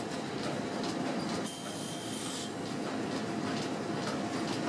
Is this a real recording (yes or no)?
yes